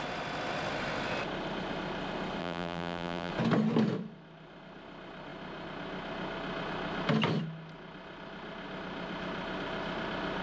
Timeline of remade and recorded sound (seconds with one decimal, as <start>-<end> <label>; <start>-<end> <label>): 0.0-2.4 recorded; 2.4-3.3 remade; 3.3-10.4 recorded